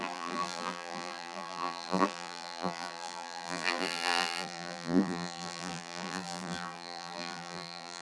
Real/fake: fake